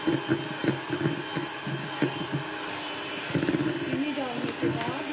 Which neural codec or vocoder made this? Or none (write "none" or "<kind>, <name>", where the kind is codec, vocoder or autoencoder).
none